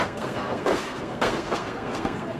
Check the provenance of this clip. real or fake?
fake